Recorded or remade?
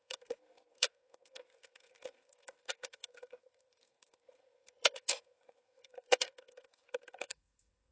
remade